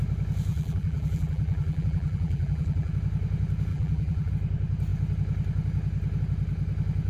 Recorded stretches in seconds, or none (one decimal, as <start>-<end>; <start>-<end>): 0.0-0.5; 2.9-3.7; 4.3-7.1